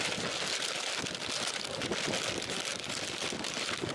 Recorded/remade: recorded